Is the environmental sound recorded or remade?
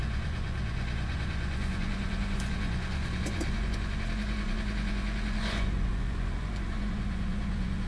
remade